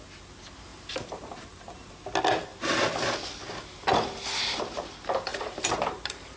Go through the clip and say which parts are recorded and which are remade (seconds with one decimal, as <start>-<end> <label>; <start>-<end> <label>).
0.0-0.7 recorded; 0.7-1.6 remade; 1.6-5.3 recorded; 5.3-6.4 remade